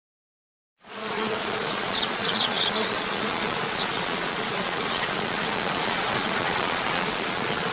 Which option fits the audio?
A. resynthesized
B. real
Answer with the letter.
A